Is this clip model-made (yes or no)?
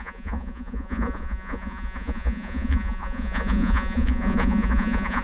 yes